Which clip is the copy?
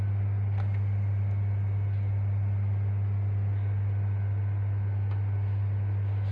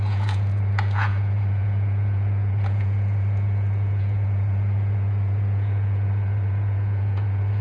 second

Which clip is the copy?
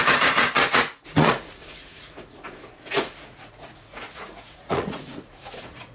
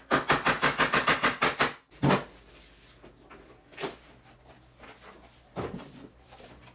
first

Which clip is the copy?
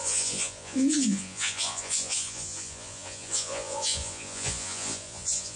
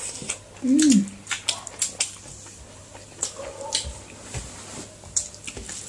first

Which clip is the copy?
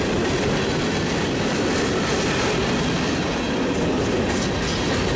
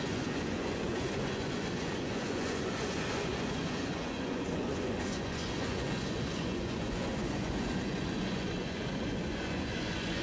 second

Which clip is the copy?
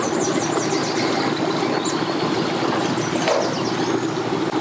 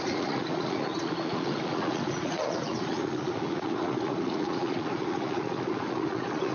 second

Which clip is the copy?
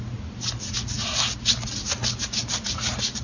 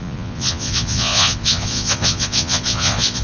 second